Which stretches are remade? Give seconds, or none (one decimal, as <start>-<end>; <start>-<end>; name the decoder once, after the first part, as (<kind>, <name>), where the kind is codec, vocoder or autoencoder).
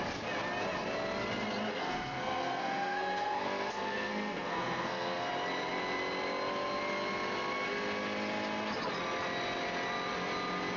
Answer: 1.7-5.3 (codec, SNAC)